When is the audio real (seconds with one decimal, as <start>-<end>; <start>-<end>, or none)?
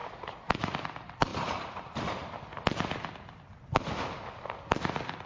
0.0-5.3